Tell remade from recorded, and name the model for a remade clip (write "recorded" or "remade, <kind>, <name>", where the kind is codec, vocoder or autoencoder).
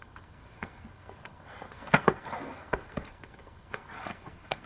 remade, codec, SNAC